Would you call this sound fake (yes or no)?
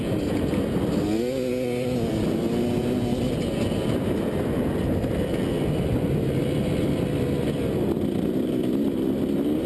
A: no